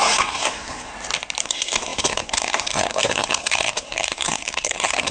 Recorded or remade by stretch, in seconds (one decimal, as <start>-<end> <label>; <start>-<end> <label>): 0.0-0.9 remade; 0.9-1.4 recorded; 1.4-5.1 remade